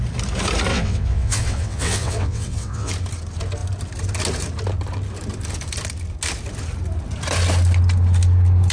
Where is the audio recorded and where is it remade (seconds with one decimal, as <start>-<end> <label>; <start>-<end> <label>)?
0.0-0.7 recorded; 0.7-2.9 remade; 2.9-8.7 recorded